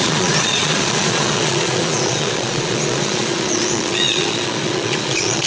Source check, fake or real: fake